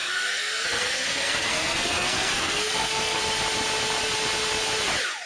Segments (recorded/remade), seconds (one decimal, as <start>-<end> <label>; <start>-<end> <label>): 0.0-3.2 remade; 3.2-5.3 recorded